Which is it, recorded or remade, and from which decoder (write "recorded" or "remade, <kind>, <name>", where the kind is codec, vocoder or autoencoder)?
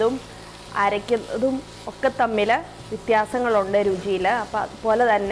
recorded